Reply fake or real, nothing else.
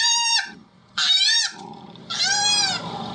fake